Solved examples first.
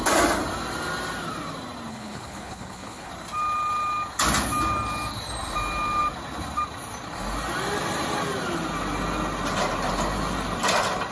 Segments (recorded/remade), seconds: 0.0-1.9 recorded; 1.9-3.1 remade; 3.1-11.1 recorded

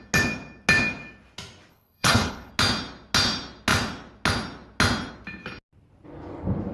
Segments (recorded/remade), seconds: 0.0-1.7 recorded; 1.7-2.5 remade; 2.5-6.7 recorded

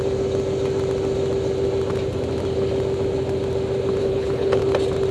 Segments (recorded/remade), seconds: 0.0-4.0 recorded; 4.0-4.6 remade; 4.6-5.1 recorded

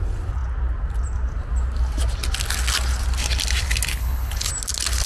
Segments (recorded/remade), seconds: 0.0-3.9 recorded; 3.9-4.5 remade; 4.5-5.1 recorded